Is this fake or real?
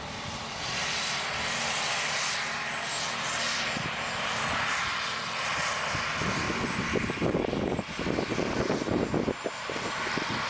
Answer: real